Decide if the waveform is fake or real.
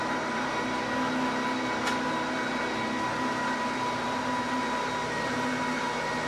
real